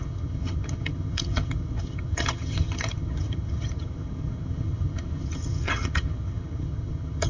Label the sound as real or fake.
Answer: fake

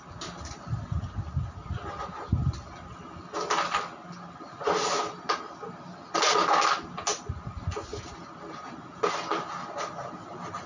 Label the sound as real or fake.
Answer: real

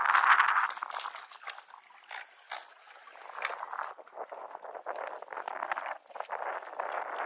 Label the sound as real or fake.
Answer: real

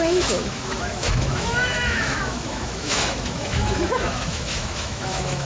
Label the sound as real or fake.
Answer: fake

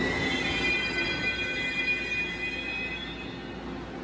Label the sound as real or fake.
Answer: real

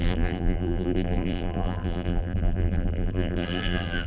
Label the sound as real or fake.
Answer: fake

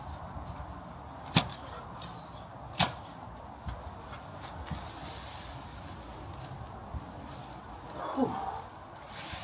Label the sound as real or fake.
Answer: real